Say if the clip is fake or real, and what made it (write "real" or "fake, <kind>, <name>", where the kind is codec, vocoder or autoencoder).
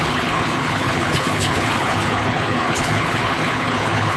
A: fake, codec, HILCodec